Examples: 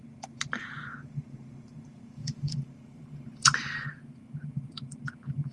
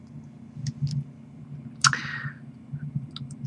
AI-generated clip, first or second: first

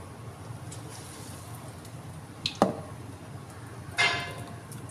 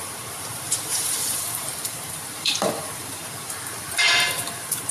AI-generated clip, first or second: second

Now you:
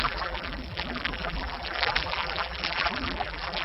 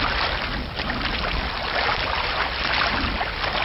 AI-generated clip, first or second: first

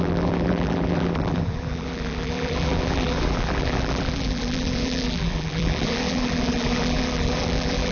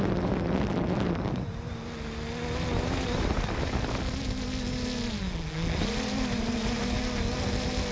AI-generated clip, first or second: first